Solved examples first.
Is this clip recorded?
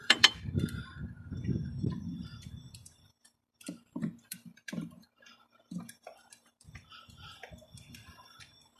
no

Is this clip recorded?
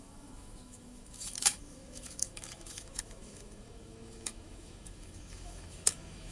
no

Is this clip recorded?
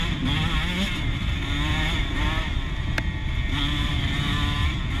yes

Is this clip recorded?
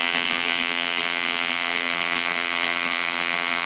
no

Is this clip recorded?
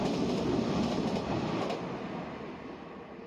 yes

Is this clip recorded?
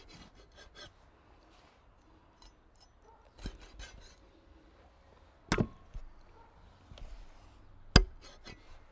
yes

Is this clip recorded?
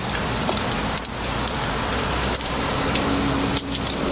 yes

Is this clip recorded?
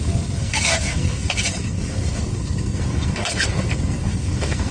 no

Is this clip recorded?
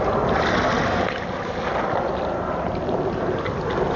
yes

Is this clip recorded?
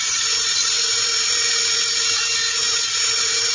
yes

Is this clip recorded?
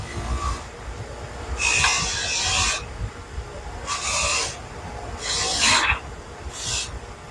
yes